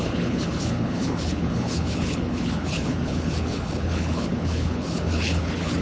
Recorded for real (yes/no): no